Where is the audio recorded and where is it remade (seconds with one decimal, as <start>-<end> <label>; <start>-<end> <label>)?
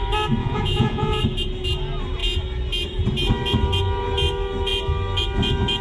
0.0-0.4 recorded; 0.4-1.2 remade; 1.2-5.8 recorded